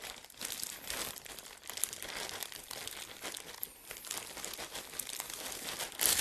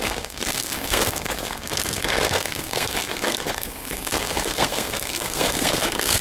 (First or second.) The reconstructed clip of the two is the second